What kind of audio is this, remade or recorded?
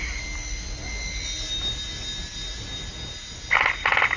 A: recorded